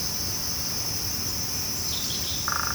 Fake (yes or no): no